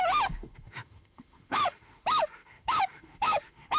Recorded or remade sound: remade